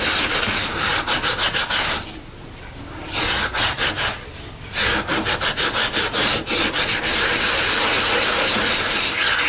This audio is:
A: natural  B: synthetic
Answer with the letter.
A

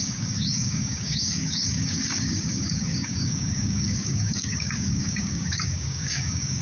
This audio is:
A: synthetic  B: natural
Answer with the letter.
A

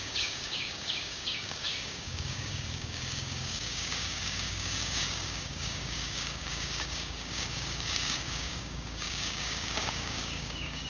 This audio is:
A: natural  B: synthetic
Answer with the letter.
B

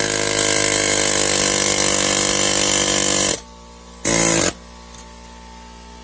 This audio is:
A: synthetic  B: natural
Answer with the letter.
B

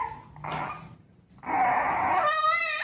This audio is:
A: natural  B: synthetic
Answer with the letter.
A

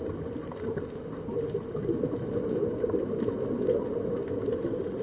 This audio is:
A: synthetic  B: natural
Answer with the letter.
B